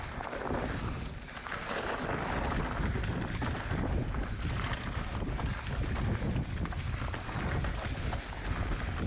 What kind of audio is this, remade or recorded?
recorded